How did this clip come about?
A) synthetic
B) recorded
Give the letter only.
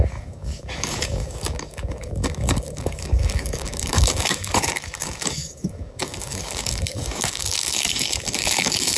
A